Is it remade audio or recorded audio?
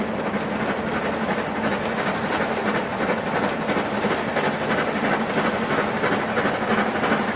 recorded